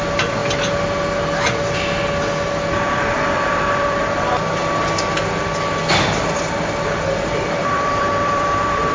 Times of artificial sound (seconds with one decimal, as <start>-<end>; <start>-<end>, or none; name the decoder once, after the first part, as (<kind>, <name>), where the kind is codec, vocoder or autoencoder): 0.0-0.4 (vocoder, BigVGAN v2); 2.7-4.6; 7.3-8.9